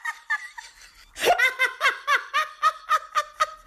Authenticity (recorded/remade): remade